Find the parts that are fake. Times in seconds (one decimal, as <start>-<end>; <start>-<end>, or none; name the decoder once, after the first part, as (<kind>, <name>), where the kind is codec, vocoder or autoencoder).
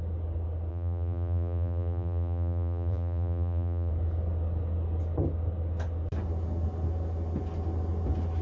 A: 0.7-3.9 (vocoder, BigVGAN v2)